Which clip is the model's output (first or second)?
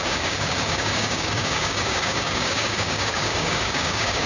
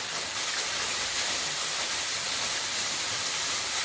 first